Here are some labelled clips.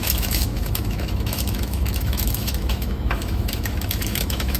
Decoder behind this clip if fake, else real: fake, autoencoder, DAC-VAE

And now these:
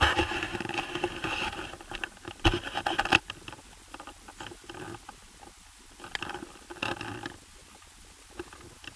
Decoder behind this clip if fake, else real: real